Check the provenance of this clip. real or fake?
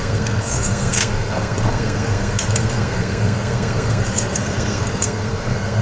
fake